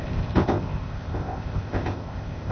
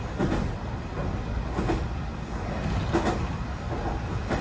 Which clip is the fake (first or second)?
first